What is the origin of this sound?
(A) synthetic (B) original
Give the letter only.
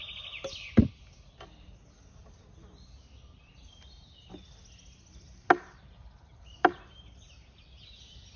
B